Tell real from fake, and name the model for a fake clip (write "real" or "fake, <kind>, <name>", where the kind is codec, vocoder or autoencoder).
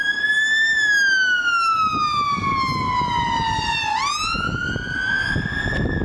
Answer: real